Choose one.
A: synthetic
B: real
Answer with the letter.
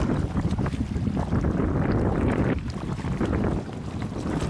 A